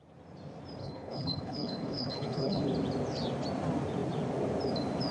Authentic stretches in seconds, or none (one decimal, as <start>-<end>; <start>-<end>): 0.0-0.8; 2.6-5.1